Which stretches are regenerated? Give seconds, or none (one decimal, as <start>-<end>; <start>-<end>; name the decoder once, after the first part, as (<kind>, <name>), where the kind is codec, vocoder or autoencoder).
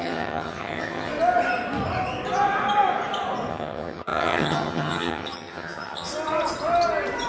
0.0-1.1 (vocoder, HiFi-GAN); 3.5-6.1